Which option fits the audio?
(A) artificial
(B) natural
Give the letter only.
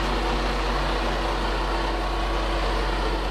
B